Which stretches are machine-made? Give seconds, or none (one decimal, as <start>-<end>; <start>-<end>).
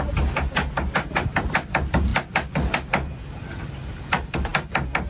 none